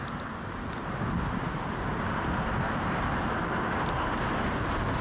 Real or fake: real